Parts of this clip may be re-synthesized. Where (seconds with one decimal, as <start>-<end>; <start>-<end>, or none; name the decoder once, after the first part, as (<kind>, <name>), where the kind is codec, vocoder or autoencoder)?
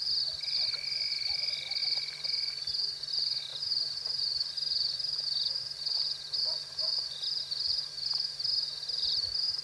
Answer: none